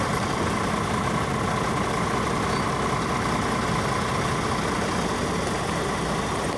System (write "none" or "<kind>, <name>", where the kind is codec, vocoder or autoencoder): none